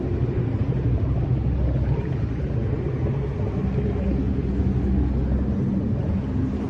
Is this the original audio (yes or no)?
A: yes